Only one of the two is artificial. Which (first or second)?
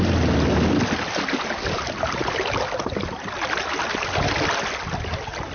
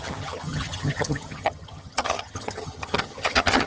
second